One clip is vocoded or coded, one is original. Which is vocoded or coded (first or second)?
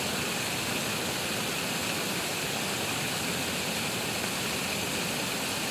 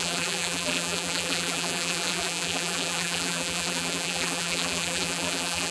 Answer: second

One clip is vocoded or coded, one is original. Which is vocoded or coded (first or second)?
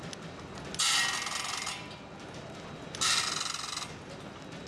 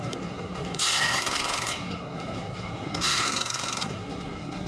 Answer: second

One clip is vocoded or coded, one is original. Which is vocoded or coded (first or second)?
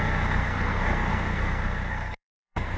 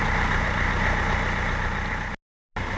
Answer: first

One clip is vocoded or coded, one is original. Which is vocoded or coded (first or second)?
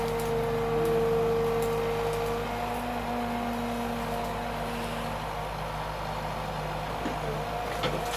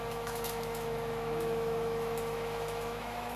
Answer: second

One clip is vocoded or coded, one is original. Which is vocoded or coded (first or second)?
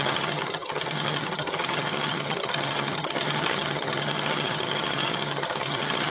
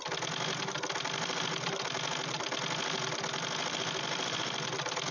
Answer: first